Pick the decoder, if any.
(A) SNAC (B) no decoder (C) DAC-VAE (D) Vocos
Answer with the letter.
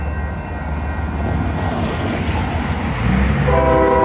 B